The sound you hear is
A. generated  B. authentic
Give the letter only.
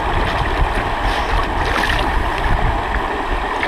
B